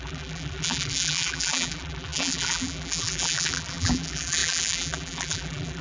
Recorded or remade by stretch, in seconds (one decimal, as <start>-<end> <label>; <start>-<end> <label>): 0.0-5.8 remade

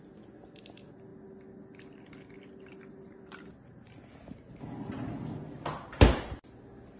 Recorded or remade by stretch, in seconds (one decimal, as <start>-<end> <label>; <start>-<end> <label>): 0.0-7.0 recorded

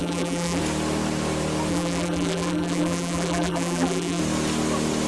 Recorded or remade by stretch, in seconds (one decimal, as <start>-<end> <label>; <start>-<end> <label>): 0.0-0.6 remade; 0.6-1.7 recorded; 1.7-4.2 remade; 4.2-5.1 recorded